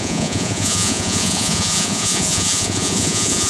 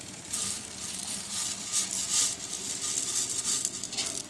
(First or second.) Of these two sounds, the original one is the second